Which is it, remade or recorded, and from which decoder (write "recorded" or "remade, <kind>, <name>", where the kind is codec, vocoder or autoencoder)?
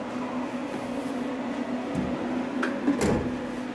recorded